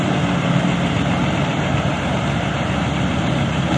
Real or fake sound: real